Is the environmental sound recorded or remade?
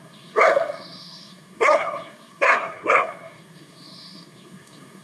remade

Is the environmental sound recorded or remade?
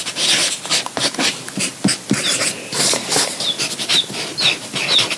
recorded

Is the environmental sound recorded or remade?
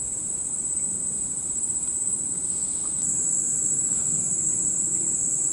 remade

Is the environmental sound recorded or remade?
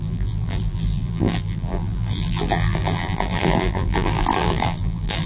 remade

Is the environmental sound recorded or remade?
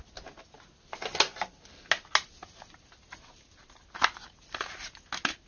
recorded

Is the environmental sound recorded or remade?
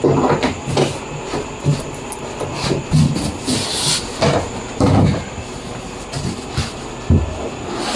recorded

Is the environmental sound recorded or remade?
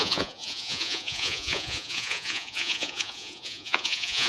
remade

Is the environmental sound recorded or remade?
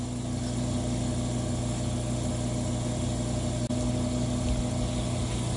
recorded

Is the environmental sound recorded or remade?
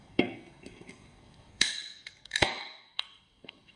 remade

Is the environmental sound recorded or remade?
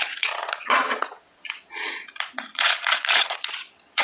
remade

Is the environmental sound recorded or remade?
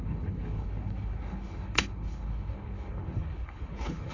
remade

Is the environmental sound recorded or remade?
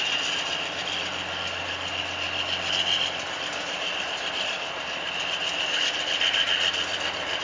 recorded